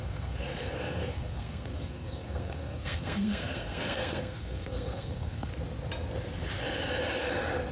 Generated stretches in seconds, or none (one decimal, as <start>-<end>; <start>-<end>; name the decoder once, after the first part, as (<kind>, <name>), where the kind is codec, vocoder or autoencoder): 0.0-5.5 (codec, SNAC)

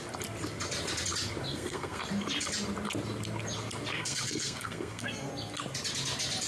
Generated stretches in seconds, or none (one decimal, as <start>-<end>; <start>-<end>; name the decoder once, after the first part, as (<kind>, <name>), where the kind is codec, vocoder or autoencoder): 1.5-2.0 (codec, SNAC); 3.9-5.3

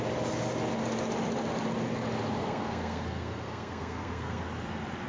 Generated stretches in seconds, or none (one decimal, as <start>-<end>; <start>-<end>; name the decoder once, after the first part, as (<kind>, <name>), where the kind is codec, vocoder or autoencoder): 2.4-4.4 (codec, SNAC)

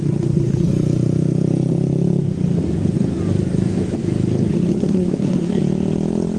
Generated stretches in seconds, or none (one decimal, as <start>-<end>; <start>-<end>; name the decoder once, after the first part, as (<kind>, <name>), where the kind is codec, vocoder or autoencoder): 0.0-0.7 (codec, SNAC); 4.5-5.6

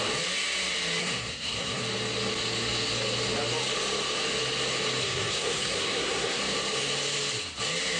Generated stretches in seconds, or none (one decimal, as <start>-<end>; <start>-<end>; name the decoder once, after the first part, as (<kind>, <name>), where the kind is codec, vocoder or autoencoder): 1.0-1.8 (codec, SNAC); 5.0-6.4

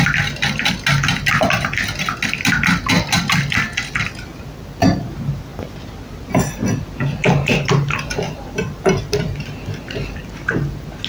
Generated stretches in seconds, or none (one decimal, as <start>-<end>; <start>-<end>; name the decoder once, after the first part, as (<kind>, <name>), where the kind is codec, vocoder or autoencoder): none